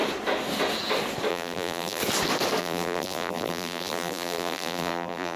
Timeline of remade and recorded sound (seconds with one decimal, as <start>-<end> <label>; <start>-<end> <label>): 0.0-1.3 recorded; 1.3-2.0 remade; 2.0-2.6 recorded; 2.6-5.4 remade